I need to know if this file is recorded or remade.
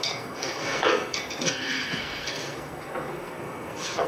remade